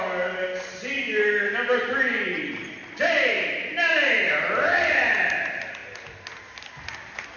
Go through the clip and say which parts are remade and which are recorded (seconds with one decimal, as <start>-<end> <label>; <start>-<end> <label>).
0.0-2.8 recorded; 2.8-4.1 remade; 4.1-7.4 recorded